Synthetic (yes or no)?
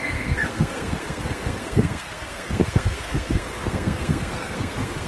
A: yes